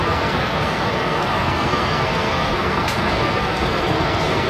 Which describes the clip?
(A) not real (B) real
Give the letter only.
A